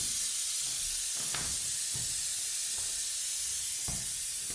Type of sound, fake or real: real